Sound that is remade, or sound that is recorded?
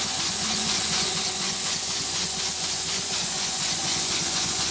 remade